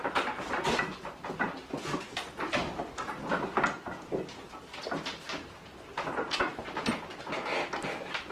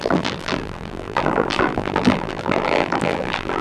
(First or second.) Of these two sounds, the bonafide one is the first